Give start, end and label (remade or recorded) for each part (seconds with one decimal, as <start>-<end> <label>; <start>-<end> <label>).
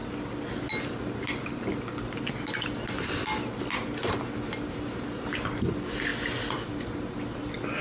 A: 0.0-7.8 recorded